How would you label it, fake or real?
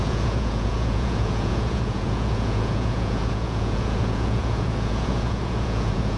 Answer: fake